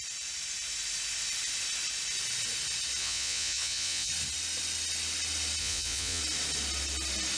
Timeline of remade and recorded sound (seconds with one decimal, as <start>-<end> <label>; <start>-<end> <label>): 0.0-3.0 recorded; 3.0-4.1 remade; 4.1-5.6 recorded; 5.6-6.2 remade; 6.2-7.4 recorded

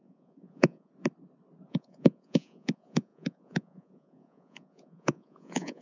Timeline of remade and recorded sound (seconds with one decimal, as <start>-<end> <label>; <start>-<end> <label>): 0.0-0.9 remade; 0.9-1.7 recorded; 1.7-5.8 remade